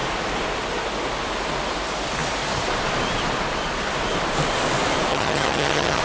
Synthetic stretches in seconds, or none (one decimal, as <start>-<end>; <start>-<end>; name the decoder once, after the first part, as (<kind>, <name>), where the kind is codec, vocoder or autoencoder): 5.1-6.0 (vocoder, HiFi-GAN)